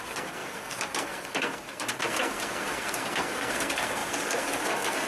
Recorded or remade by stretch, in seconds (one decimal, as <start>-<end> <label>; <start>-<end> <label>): 0.0-5.1 remade